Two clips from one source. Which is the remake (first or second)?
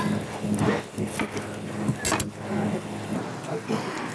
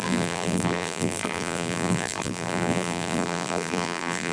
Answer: second